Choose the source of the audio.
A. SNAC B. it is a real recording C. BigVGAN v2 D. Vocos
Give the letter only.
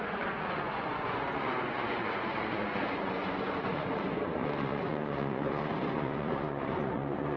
D